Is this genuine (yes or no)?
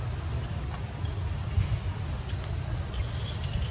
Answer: yes